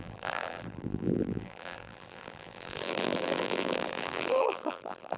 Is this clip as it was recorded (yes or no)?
no